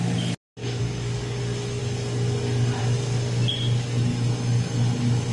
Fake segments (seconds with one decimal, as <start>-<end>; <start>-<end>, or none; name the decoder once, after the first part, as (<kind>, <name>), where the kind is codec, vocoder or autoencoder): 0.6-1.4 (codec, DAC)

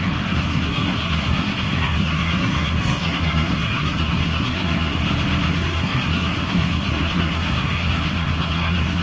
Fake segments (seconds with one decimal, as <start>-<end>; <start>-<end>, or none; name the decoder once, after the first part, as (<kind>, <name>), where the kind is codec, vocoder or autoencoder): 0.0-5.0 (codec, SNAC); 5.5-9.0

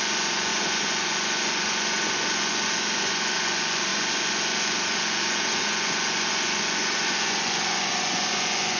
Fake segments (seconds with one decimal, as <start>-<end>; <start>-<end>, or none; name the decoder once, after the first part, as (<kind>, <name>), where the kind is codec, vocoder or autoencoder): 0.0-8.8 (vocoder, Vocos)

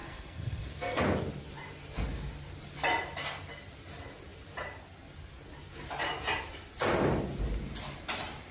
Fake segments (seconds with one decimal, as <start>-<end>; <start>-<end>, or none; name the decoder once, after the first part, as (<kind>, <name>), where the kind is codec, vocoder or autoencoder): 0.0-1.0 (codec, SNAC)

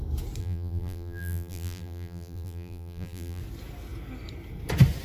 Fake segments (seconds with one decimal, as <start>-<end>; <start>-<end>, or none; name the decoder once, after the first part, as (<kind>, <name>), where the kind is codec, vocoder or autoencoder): 0.4-3.4 (vocoder, BigVGAN v2)